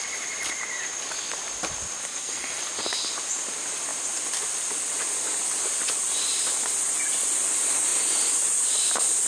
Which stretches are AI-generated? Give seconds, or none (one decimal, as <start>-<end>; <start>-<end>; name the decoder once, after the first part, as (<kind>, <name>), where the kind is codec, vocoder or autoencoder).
2.0-2.6 (codec, SNAC)